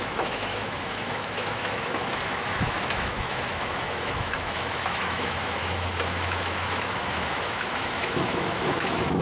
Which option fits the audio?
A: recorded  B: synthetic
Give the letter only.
B